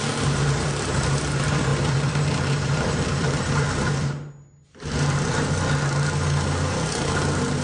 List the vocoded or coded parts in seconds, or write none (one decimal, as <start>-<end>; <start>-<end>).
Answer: 1.7-4.3